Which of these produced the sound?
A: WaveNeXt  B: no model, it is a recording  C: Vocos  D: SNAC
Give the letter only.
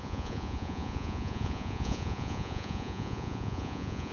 C